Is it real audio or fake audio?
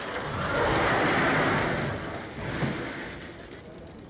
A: real